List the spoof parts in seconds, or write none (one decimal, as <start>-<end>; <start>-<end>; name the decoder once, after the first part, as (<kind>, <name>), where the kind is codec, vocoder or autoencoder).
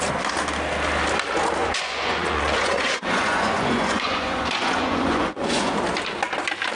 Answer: 1.6-5.7 (vocoder, Vocos)